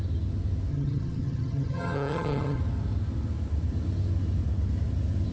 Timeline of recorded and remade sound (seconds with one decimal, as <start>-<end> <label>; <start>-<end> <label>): 0.0-0.7 recorded; 0.7-2.6 remade; 2.6-5.3 recorded